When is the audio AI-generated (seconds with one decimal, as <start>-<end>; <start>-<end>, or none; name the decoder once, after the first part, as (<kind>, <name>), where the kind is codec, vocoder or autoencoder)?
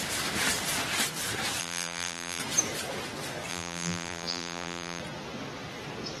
1.6-2.4 (vocoder, BigVGAN v2); 3.5-5.0